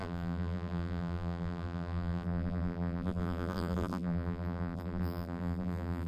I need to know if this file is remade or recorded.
remade